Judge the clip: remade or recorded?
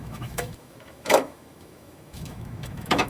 remade